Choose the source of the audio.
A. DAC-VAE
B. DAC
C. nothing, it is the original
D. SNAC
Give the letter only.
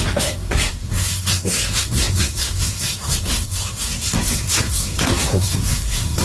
D